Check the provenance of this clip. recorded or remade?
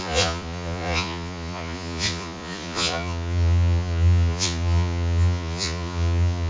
remade